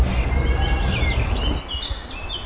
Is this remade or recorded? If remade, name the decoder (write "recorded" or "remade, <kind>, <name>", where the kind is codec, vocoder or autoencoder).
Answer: recorded